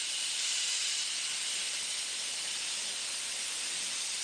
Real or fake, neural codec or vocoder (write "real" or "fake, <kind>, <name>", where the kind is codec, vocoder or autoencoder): fake, vocoder, BigVGAN v2